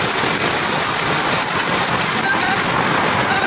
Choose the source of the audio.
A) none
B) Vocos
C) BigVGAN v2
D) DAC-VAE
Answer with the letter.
A